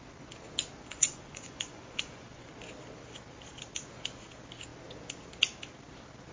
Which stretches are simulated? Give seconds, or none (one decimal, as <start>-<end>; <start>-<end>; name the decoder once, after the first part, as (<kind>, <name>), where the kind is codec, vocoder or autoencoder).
0.9-2.5 (vocoder, Vocos)